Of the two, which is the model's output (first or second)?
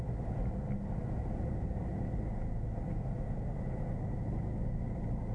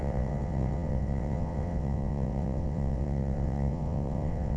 second